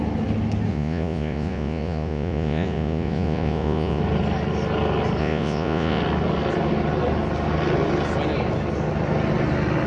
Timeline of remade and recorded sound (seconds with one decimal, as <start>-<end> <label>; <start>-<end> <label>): 0.0-0.7 recorded; 0.7-4.0 remade; 4.0-5.2 recorded; 5.2-6.0 remade; 6.0-9.9 recorded